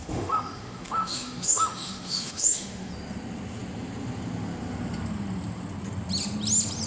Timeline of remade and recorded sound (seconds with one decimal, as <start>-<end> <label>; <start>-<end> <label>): 0.0-2.9 remade; 2.9-6.9 recorded